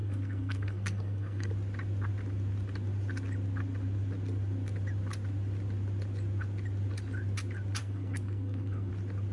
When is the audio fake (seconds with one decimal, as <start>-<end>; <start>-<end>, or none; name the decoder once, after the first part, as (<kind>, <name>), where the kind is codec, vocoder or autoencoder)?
0.0-1.5 (codec, SNAC); 7.8-8.9